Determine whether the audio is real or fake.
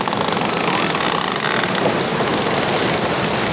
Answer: real